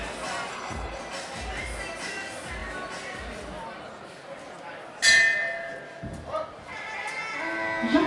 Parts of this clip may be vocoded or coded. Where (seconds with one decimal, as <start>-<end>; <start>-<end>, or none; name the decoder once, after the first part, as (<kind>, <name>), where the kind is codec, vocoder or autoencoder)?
0.5-1.0 (codec, HILCodec)